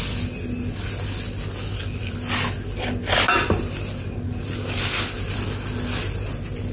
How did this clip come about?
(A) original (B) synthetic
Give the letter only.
A